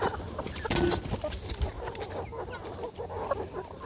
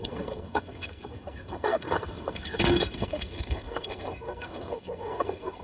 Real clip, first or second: first